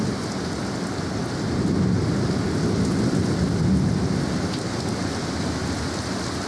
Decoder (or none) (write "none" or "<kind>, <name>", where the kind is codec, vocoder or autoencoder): none